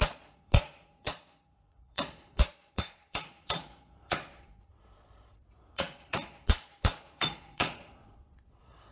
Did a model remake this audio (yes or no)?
yes